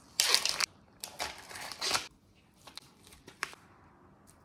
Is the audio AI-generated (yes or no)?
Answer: yes